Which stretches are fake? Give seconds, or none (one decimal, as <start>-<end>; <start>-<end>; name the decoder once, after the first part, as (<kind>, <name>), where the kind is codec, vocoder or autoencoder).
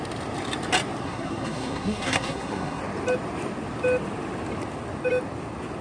1.0-2.8 (codec, SNAC)